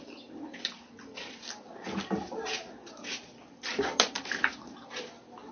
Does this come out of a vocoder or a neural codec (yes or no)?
no